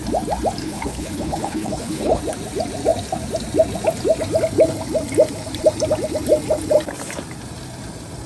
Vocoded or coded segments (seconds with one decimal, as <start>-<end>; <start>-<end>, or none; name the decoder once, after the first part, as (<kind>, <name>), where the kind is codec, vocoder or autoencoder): 0.6-2.2 (codec, HILCodec)